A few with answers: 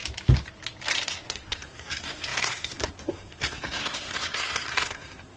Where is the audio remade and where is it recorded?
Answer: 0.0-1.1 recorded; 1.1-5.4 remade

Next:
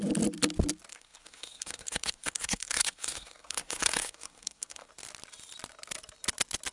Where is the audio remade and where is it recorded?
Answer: 0.0-0.9 recorded; 0.9-4.9 remade; 4.9-6.7 recorded

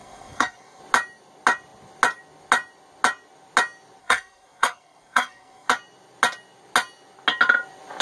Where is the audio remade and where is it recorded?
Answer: 0.0-0.8 remade; 0.8-4.0 recorded; 4.0-5.7 remade; 5.7-8.0 recorded

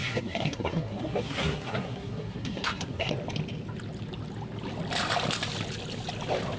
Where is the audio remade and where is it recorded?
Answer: 0.0-3.1 remade; 3.1-6.6 recorded